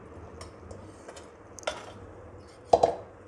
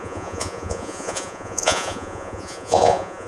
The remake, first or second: second